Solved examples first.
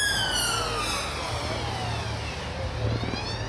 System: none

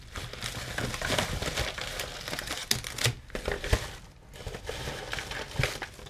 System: none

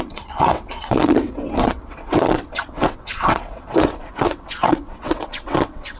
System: vocoder, WaveNeXt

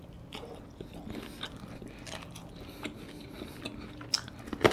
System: none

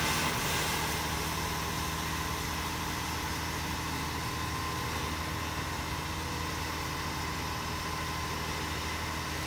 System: none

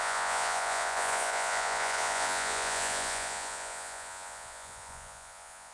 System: vocoder, Vocos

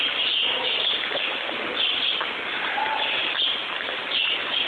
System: none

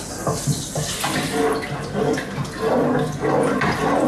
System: none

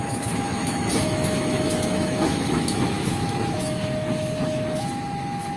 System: autoencoder, DAC-VAE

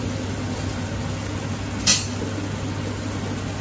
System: none